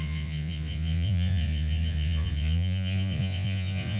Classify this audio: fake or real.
fake